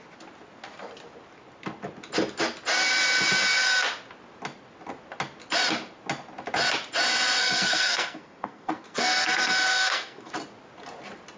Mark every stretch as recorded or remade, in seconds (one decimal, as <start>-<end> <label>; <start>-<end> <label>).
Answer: 0.0-7.4 recorded; 7.4-10.3 remade; 10.3-11.4 recorded